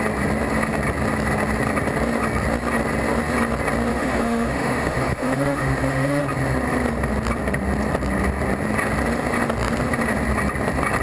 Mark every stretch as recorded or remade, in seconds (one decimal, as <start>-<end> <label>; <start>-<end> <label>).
0.0-3.9 recorded; 3.9-6.2 remade; 6.2-11.0 recorded

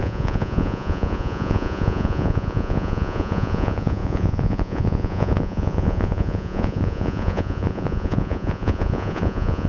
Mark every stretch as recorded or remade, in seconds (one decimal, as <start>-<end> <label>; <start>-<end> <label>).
0.0-9.7 remade

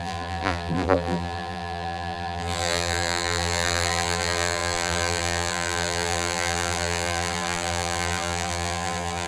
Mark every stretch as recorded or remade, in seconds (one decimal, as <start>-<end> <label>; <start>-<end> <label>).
0.0-9.3 remade

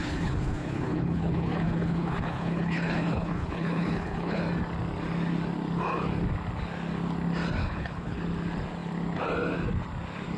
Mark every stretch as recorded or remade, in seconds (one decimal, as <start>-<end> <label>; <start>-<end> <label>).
0.0-4.4 remade; 4.4-7.6 recorded; 7.6-8.2 remade; 8.2-10.4 recorded

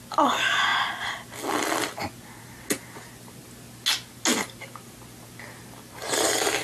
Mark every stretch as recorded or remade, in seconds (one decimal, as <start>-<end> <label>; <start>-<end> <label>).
0.0-6.6 recorded